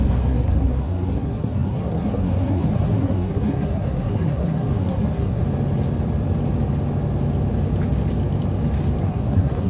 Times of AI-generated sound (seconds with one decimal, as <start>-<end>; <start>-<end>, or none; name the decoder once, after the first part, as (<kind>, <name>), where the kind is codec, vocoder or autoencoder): 0.0-5.4 (codec, SNAC); 9.0-9.7